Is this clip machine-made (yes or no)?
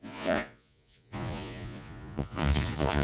yes